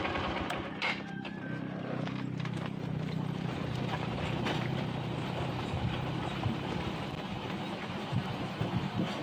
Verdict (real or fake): fake